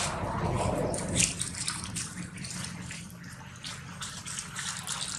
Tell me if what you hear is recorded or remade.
recorded